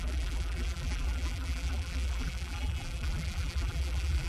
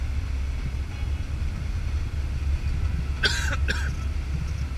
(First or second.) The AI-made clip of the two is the first